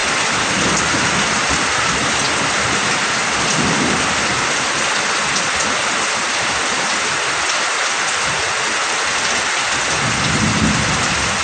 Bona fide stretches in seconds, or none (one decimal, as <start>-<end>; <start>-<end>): 0.0-11.4